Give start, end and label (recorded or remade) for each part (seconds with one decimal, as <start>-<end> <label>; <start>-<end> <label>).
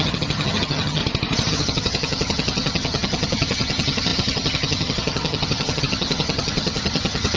0.0-1.0 remade; 1.0-1.5 recorded; 1.5-7.4 remade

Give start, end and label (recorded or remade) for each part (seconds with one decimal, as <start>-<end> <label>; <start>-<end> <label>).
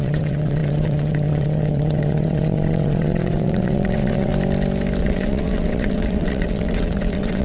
0.0-4.3 remade; 4.3-5.0 recorded; 5.0-7.4 remade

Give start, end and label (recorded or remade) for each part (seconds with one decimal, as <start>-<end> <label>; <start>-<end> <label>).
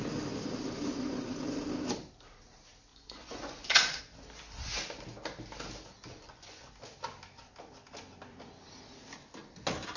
0.0-2.9 recorded; 2.9-4.0 remade; 4.0-6.1 recorded; 6.1-6.7 remade; 6.7-10.0 recorded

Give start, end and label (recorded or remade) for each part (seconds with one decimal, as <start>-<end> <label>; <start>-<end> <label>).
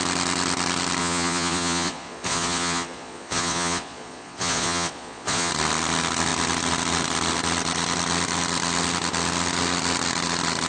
0.0-1.0 recorded; 1.0-5.5 remade; 5.5-10.7 recorded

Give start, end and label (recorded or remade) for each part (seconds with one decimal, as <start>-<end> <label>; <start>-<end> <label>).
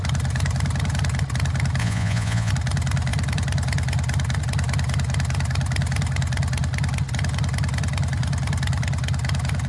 0.0-1.8 recorded; 1.8-2.5 remade; 2.5-9.7 recorded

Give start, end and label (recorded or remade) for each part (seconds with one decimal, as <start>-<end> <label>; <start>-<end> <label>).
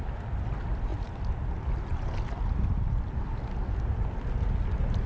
0.0-5.1 recorded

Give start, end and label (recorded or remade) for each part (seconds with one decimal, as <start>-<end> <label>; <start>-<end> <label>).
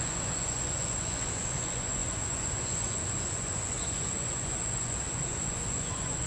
0.0-6.3 remade